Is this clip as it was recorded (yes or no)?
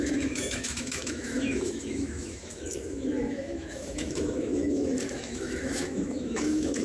no